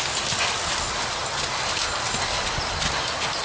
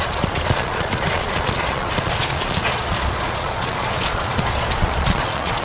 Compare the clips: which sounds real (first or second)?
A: first